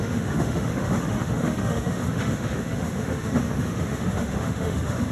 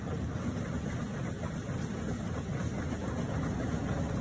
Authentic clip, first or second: second